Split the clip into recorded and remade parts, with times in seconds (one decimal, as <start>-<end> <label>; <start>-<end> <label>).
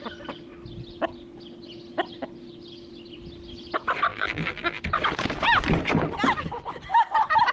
0.0-4.1 recorded; 4.1-4.8 remade; 4.8-7.5 recorded